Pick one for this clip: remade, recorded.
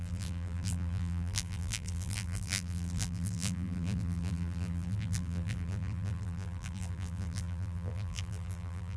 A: remade